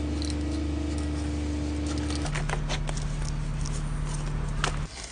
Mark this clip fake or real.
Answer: real